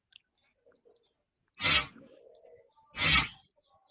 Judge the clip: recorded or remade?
recorded